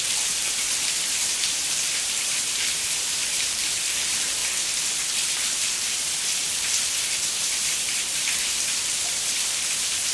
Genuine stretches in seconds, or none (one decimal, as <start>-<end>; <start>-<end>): 4.4-5.0